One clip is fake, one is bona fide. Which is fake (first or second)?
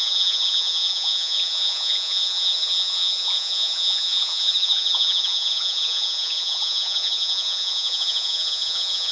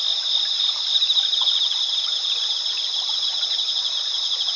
first